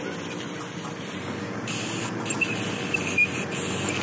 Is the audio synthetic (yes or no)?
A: no